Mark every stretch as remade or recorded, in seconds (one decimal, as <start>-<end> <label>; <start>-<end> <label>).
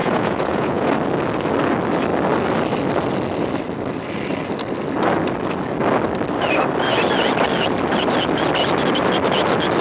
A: 0.0-0.9 remade; 0.9-9.8 recorded